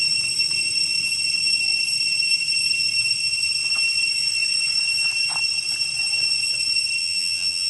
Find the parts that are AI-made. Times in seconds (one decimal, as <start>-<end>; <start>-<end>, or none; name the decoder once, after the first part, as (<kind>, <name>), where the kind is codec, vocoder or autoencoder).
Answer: 7.0-7.7 (vocoder, BigVGAN v2)